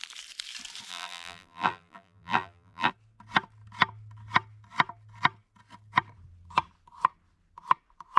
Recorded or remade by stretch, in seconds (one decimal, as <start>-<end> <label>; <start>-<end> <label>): 0.0-0.9 recorded; 0.9-2.9 remade; 2.9-8.2 recorded